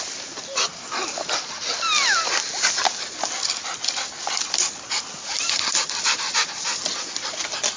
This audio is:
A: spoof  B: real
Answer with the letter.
B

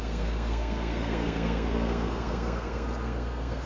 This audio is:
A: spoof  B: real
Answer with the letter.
A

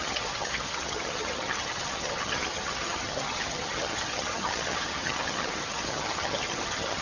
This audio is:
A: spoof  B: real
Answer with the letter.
A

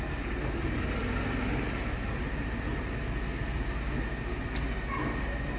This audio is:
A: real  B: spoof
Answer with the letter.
A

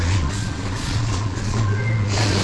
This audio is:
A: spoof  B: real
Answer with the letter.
A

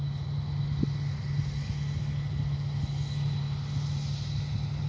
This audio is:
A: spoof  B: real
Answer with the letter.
B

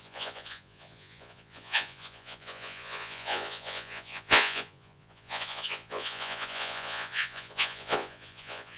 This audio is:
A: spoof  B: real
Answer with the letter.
A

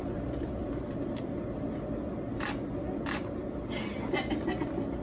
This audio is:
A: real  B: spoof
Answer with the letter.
A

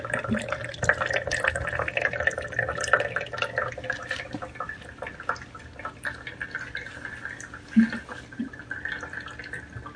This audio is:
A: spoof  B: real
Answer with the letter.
B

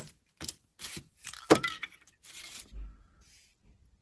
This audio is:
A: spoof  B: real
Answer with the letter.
B